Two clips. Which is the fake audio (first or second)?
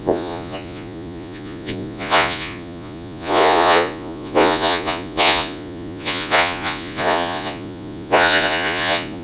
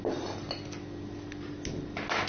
first